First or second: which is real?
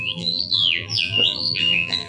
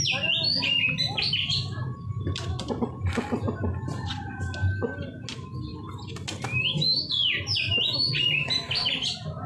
second